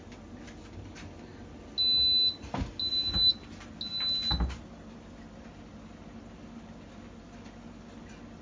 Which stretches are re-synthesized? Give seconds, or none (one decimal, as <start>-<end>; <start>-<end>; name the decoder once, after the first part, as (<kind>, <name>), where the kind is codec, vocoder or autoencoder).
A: none